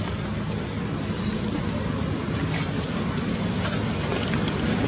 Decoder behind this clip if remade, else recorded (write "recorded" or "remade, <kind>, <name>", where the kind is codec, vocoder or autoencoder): recorded